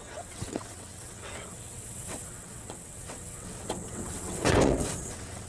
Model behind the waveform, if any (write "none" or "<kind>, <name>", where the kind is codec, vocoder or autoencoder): vocoder, WaveNeXt